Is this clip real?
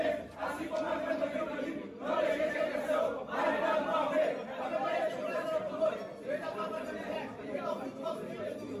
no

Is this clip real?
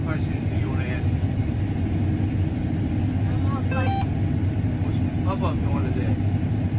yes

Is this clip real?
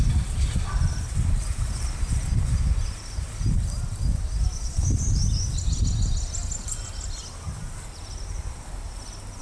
yes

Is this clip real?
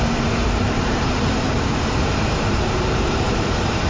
no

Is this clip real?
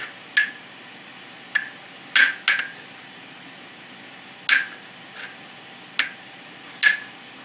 yes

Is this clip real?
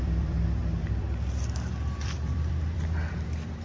no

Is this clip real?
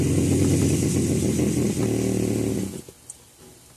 yes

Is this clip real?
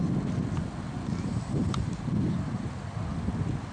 yes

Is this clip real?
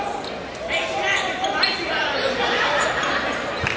yes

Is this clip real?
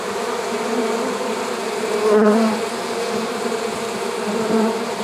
no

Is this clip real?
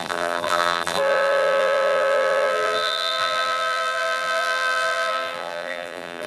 no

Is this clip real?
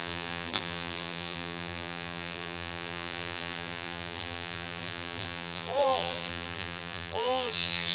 no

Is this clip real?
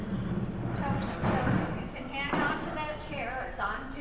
yes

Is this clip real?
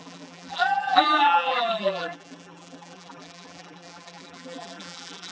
no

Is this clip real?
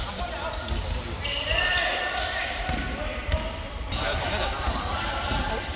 no